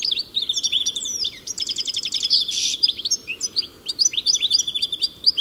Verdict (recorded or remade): remade